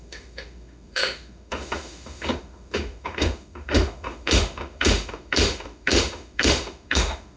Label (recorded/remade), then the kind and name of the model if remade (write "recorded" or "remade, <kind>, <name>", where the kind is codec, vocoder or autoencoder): remade, autoencoder, DAC-VAE